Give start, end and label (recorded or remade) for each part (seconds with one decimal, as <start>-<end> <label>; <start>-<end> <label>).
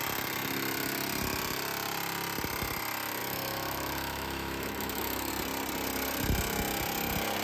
0.0-3.2 recorded; 3.2-5.3 remade; 5.3-7.4 recorded